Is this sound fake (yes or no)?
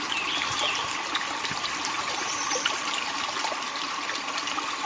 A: no